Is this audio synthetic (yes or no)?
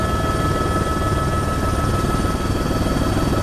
no